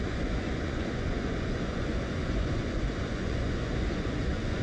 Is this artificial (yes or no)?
yes